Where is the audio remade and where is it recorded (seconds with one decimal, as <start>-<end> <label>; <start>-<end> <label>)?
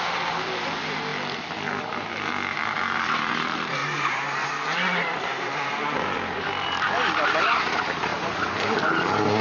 0.0-3.8 recorded; 3.8-6.5 remade; 6.5-8.1 recorded; 8.1-8.8 remade; 8.8-9.4 recorded